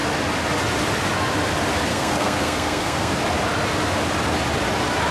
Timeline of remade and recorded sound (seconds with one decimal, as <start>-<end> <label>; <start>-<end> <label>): 0.0-1.9 recorded; 1.9-3.1 remade; 3.1-5.1 recorded